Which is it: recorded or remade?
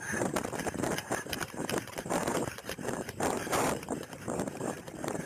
remade